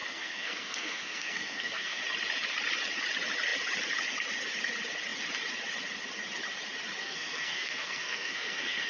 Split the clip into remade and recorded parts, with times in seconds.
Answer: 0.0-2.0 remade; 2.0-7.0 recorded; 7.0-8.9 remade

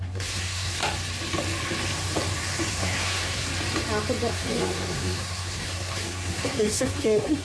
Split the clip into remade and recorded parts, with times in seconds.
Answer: 0.0-0.8 remade; 0.8-2.7 recorded; 2.7-3.5 remade; 3.5-4.3 recorded; 4.3-7.4 remade

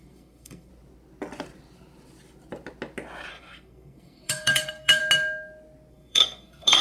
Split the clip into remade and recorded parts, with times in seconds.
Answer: 0.0-0.7 remade; 0.7-3.3 recorded; 3.3-5.0 remade; 5.0-5.9 recorded; 5.9-6.8 remade

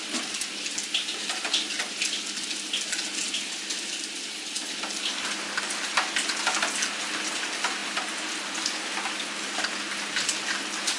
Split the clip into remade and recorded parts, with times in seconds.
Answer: 0.0-11.0 recorded

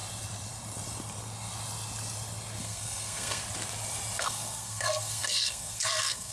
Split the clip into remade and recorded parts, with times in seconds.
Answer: 0.0-2.6 recorded; 2.6-3.4 remade; 3.4-4.2 recorded; 4.2-6.3 remade